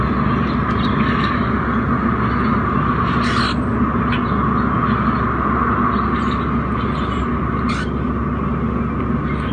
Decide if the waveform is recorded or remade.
recorded